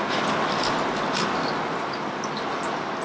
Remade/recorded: recorded